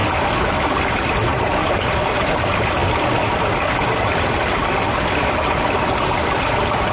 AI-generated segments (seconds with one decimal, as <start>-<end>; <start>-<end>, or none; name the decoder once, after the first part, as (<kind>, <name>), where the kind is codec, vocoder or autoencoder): none